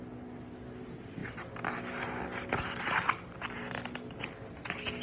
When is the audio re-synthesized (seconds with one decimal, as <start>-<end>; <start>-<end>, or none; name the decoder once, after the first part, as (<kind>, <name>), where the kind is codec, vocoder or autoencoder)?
none